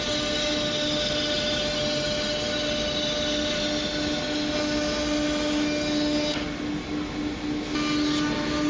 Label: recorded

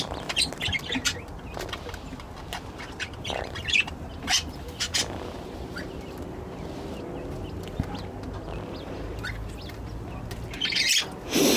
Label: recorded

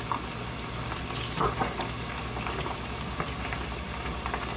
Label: recorded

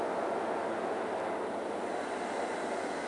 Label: recorded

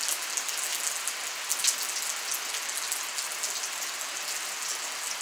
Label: recorded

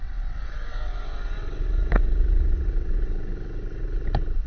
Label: remade